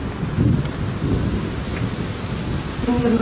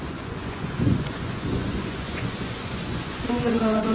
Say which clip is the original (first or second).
first